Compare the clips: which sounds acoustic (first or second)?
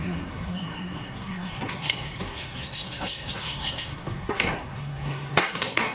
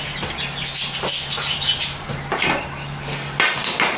second